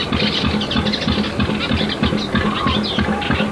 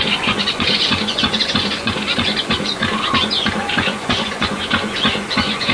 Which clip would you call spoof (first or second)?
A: second